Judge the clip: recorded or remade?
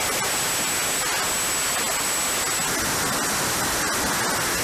recorded